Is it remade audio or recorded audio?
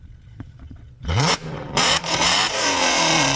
remade